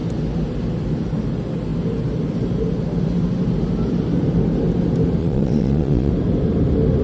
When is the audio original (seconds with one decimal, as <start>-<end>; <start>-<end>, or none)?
0.0-5.2; 6.1-7.0